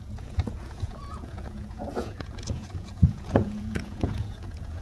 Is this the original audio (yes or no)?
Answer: no